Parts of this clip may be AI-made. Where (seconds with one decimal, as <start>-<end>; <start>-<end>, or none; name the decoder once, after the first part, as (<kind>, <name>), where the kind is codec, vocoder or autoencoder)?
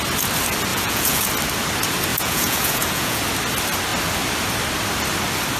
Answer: 0.7-1.3 (vocoder, Vocos); 2.1-3.2